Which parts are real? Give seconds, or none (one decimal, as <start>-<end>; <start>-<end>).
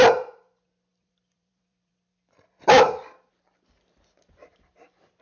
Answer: 0.0-0.9; 3.3-5.2